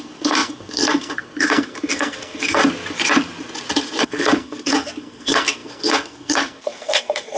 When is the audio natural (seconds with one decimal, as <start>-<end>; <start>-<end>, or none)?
2.6-4.0